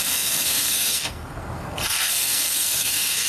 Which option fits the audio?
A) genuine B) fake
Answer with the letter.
B